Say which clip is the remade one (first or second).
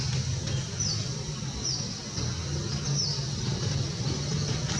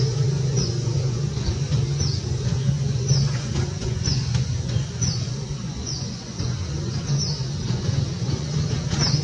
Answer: second